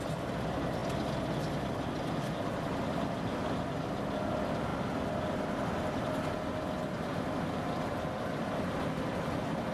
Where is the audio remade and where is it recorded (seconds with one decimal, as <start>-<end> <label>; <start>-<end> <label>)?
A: 0.0-9.7 recorded